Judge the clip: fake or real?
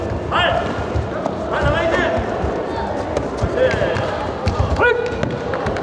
real